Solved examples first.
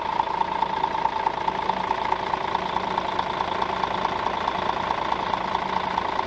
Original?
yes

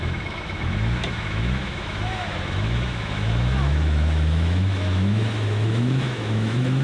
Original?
no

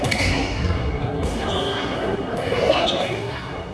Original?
no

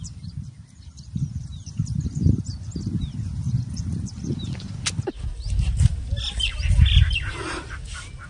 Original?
yes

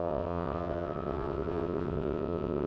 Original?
no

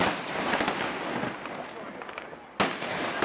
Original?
yes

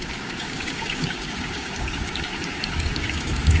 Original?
no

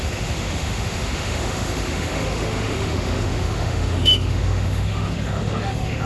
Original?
no